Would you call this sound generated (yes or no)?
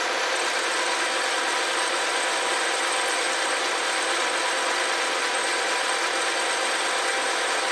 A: no